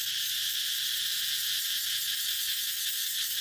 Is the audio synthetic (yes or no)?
no